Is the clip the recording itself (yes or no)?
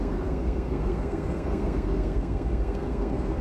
no